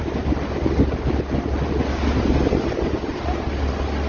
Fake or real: real